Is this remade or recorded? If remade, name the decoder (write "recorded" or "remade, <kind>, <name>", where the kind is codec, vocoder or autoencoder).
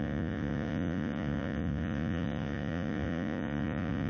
remade, vocoder, Vocos